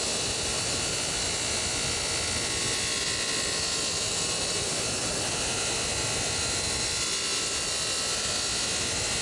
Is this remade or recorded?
recorded